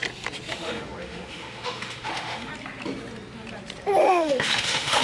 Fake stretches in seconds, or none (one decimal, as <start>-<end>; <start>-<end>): 0.5-2.5; 4.0-5.0